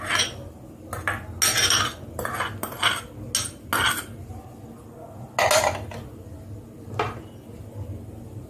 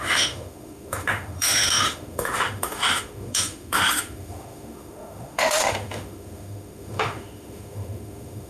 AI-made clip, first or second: second